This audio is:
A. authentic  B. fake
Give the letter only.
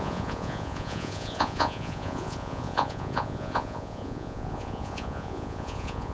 B